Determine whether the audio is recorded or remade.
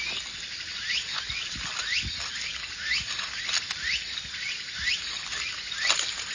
recorded